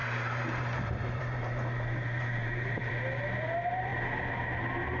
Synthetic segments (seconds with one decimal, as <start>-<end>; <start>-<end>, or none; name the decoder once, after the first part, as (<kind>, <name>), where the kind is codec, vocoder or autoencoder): 0.0-2.9 (vocoder, BigVGAN v2)